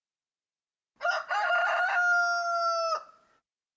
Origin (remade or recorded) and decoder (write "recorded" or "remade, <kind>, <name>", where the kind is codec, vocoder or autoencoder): recorded